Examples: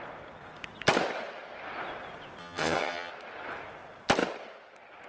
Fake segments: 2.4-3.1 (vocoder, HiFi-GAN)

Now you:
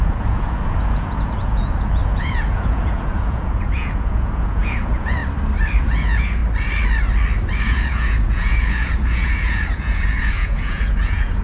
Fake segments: 0.0-5.2 (vocoder, Vocos); 5.8-6.4; 7.6-11.4

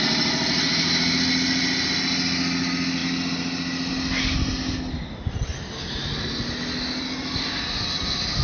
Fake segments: none

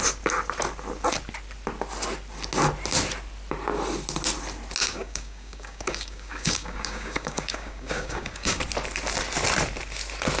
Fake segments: 4.8-8.6 (codec, DAC)

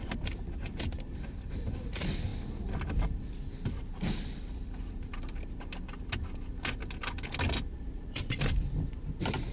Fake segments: 7.7-9.1 (vocoder, BigVGAN v2)